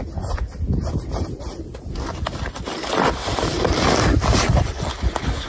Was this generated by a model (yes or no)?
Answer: no